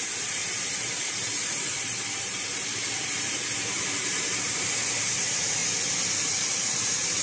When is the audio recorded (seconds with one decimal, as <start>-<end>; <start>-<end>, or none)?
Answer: 5.6-6.1